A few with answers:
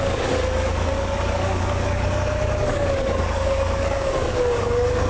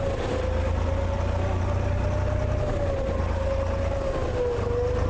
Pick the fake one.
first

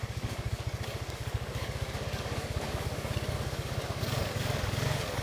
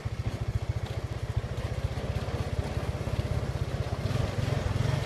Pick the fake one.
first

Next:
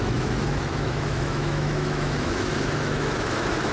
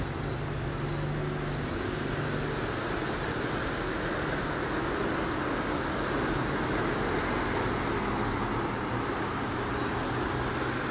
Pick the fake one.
first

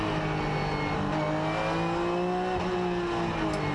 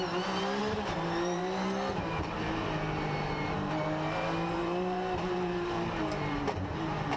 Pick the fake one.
second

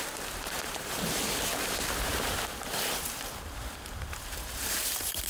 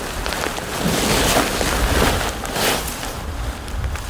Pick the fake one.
first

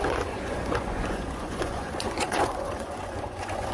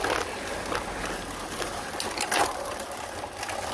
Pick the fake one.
first